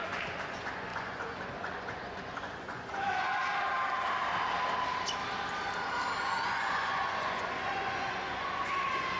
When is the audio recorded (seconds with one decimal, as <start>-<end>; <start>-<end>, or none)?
3.5-6.2